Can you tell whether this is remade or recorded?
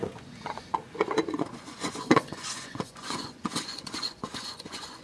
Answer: remade